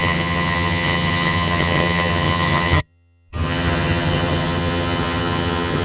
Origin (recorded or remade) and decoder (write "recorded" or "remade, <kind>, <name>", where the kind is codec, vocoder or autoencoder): remade, vocoder, HiFi-GAN